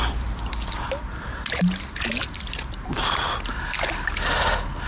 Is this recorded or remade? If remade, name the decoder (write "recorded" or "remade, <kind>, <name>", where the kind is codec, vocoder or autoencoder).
recorded